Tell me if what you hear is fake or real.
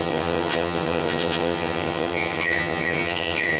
fake